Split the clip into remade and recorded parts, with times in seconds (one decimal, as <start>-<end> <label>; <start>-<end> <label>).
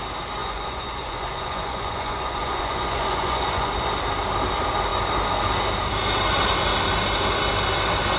0.0-0.4 recorded; 0.4-3.7 remade; 3.7-8.2 recorded